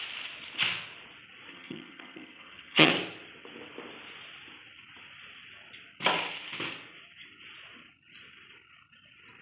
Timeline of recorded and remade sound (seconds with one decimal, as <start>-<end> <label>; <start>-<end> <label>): 0.0-1.5 recorded; 1.5-2.9 remade; 2.9-9.4 recorded